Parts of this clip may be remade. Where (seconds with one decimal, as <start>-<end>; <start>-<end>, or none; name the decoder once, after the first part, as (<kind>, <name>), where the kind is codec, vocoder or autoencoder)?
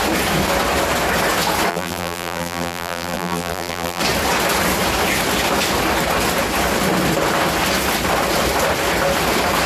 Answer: 1.7-4.0 (vocoder, BigVGAN v2)